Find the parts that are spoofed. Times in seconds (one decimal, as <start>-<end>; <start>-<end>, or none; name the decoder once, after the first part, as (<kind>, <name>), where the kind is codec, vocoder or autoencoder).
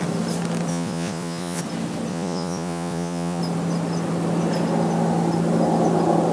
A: 0.7-1.6 (vocoder, Vocos); 2.1-3.4